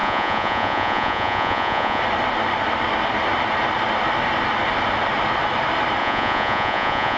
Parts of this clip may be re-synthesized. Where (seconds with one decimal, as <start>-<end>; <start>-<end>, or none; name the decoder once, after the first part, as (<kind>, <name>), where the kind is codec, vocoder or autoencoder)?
0.0-2.0 (vocoder, Vocos); 6.0-7.2